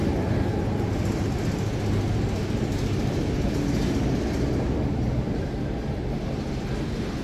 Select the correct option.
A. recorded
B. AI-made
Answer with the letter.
A